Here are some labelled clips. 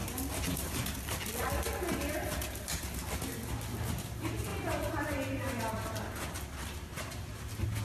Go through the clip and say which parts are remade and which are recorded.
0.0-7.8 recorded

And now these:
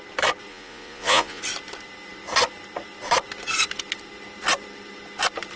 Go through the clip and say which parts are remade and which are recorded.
0.0-0.5 recorded; 0.5-1.4 remade; 1.4-5.6 recorded